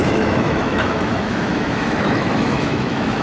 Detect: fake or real fake